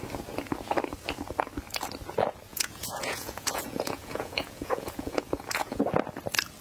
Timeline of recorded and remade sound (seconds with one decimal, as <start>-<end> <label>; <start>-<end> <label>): 0.0-2.5 recorded; 2.5-5.8 remade; 5.8-6.6 recorded